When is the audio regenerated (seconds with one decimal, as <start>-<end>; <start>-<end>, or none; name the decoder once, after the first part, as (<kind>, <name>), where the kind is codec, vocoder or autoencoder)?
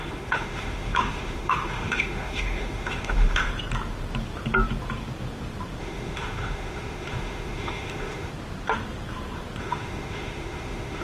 0.0-3.5 (autoencoder, DAC-VAE); 5.8-8.3; 9.6-11.0